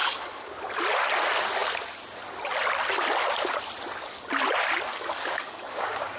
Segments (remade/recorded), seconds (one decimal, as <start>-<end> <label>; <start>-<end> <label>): 0.0-0.6 remade; 0.6-4.9 recorded; 4.9-6.2 remade